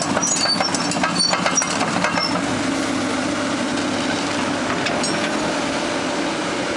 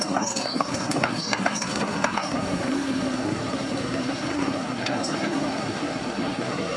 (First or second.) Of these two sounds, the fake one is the second